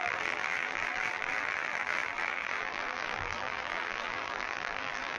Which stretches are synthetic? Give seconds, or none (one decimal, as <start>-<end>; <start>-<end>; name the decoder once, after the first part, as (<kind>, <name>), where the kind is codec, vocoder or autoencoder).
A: 0.0-5.2 (vocoder, BigVGAN v2)